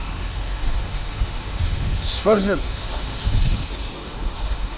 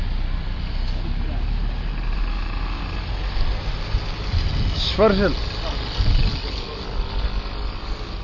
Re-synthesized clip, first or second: first